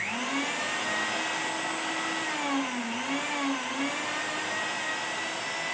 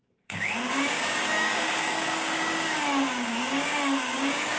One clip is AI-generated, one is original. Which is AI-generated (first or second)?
second